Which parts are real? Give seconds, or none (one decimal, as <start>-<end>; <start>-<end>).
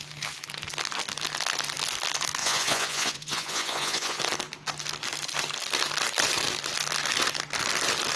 0.0-2.4; 4.2-8.2